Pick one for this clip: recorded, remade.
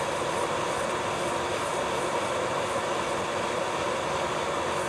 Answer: recorded